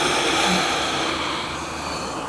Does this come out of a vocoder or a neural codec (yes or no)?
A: no